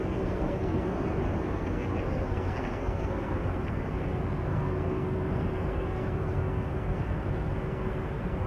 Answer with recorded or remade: remade